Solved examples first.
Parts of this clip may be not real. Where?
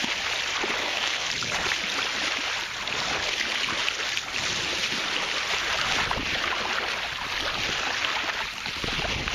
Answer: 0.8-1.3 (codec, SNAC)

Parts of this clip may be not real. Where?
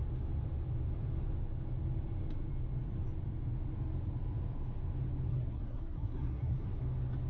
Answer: 5.3-6.7 (codec, SNAC)